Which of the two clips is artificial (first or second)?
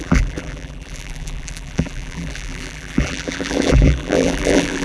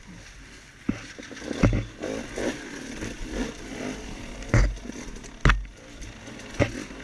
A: first